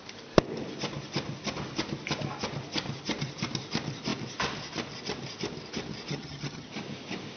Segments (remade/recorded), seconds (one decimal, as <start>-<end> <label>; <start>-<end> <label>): 0.0-6.1 recorded; 6.1-6.7 remade; 6.7-7.4 recorded